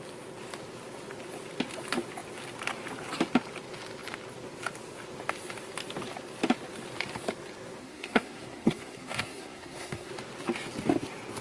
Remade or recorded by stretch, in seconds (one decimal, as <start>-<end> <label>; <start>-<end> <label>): 0.0-7.8 recorded; 7.8-10.1 remade; 10.1-11.4 recorded